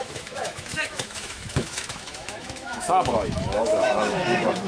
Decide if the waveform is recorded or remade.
remade